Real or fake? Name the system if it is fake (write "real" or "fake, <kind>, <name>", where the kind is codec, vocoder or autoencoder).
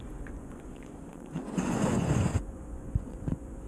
fake, vocoder, Vocos